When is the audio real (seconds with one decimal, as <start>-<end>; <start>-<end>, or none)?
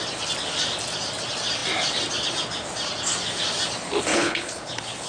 0.0-4.1